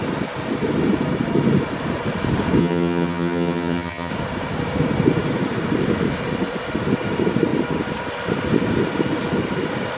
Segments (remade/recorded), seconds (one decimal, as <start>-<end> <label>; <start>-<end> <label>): 0.0-2.6 recorded; 2.6-4.1 remade; 4.1-10.0 recorded